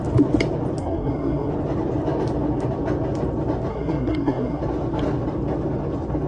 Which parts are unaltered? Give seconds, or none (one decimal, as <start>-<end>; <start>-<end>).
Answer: 0.0-0.8; 1.5-3.7; 4.6-6.3